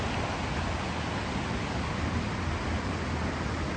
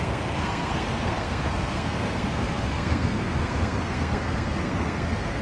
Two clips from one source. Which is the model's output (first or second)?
second